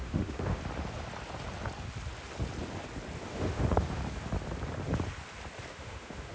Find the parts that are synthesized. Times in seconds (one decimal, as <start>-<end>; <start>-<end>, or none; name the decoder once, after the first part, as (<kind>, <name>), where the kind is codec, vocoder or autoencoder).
0.0-0.6 (autoencoder, DAC-VAE); 3.3-4.0; 5.7-6.3